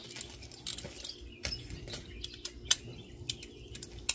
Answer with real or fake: real